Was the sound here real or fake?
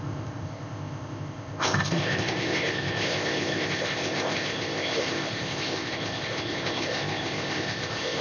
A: fake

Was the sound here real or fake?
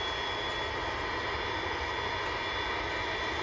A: real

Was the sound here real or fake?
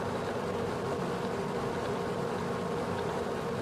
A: real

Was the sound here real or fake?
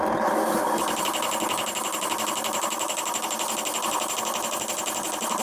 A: real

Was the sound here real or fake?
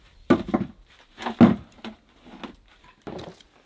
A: real